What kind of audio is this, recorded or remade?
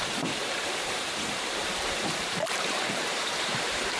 remade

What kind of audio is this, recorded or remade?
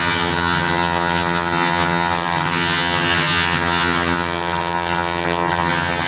remade